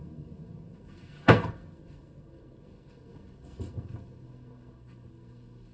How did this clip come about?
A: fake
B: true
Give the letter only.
A